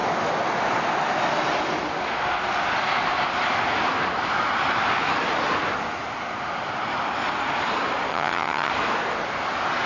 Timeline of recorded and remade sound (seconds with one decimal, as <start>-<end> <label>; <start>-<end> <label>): 0.0-8.1 recorded; 8.1-8.7 remade; 8.7-9.9 recorded